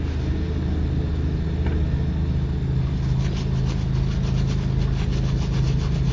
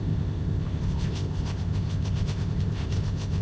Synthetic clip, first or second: second